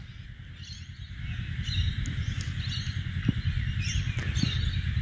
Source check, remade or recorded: recorded